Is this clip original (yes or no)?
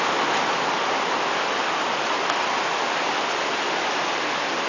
yes